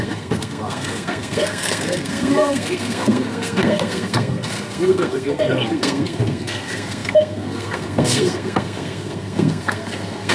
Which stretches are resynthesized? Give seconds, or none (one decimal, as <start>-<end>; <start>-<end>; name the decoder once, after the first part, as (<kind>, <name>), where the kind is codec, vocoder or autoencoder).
0.0-10.3 (codec, SNAC)